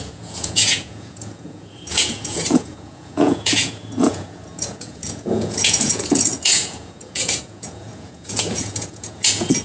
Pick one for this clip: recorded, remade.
remade